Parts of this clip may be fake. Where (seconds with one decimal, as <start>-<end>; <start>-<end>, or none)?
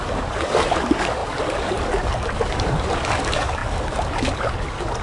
0.0-5.0